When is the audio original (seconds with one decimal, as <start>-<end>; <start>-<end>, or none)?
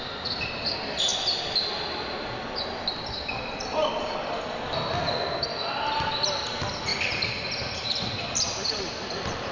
0.0-9.5